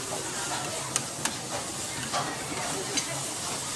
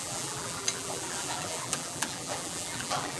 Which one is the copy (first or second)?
second